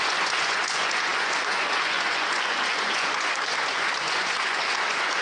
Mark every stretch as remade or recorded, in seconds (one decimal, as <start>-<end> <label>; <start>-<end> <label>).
0.0-5.2 remade